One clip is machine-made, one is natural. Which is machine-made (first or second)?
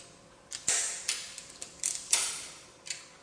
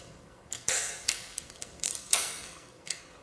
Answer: second